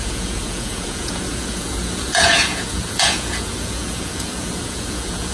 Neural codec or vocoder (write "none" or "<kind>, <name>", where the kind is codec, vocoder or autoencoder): vocoder, Vocos